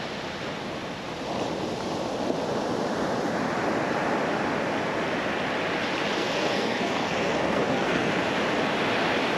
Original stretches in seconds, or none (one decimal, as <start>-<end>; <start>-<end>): 0.0-6.2; 8.1-9.4